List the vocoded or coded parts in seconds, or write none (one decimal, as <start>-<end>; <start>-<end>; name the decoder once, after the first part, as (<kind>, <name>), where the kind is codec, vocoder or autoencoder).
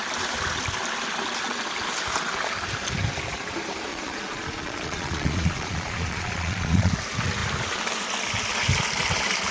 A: 3.9-6.9 (vocoder, Vocos)